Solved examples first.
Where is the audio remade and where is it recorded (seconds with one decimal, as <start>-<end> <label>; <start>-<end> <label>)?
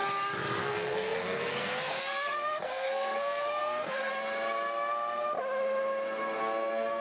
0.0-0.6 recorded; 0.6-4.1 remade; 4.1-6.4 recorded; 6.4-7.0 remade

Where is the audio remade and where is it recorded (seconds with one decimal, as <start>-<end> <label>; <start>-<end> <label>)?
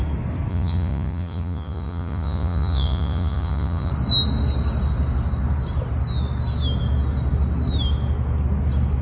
0.0-0.5 recorded; 0.5-3.9 remade; 3.9-9.0 recorded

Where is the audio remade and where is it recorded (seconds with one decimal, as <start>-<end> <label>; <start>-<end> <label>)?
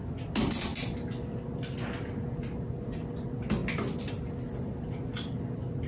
0.0-5.9 recorded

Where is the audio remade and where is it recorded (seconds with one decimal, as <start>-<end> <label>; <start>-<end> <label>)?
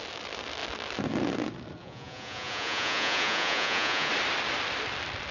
0.0-1.8 recorded; 1.8-4.1 remade; 4.1-5.3 recorded